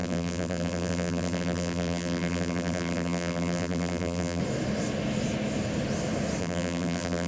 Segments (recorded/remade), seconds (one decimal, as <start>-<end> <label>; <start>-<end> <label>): 0.0-4.4 remade; 4.4-6.4 recorded; 6.4-7.3 remade